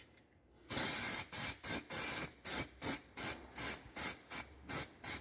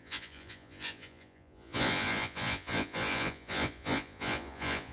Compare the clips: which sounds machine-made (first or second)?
second